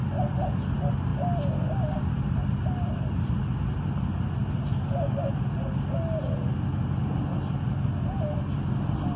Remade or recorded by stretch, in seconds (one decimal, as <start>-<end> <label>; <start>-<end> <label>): 0.0-4.8 recorded; 4.8-5.3 remade; 5.3-9.2 recorded